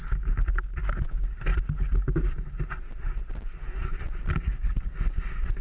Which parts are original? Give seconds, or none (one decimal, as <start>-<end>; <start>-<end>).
0.0-5.6